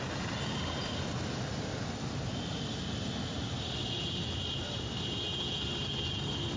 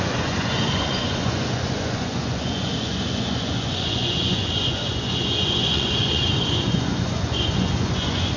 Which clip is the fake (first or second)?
second